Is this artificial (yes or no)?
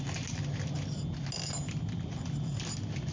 no